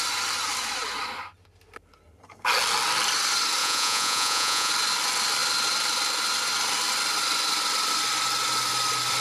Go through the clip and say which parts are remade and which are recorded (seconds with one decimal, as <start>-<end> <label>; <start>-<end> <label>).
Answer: 0.0-3.6 recorded; 3.6-4.7 remade; 4.7-9.2 recorded